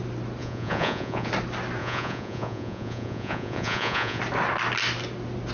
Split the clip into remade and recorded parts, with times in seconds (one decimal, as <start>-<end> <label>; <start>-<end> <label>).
0.0-0.4 recorded; 0.4-1.3 remade; 1.3-1.8 recorded; 1.8-4.2 remade; 4.2-5.5 recorded